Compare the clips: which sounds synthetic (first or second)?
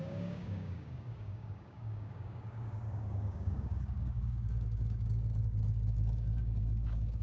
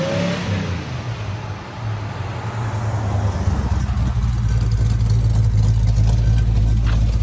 first